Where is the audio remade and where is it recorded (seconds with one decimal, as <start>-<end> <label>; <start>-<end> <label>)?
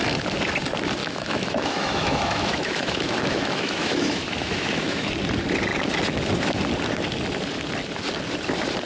0.0-1.0 recorded; 1.0-5.1 remade; 5.1-8.9 recorded